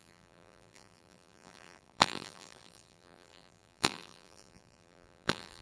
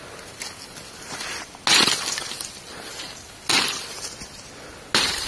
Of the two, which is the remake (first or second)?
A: first